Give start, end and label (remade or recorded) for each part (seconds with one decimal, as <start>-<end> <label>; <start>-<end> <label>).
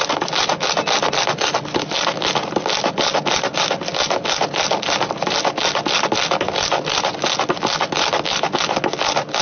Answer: 0.0-9.4 recorded